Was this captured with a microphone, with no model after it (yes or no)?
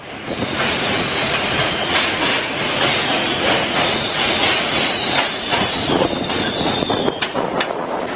no